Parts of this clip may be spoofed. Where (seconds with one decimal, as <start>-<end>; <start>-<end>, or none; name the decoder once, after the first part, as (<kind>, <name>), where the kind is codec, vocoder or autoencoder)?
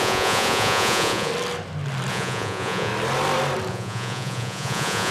0.0-1.3 (vocoder, Vocos); 2.1-2.9; 3.7-5.1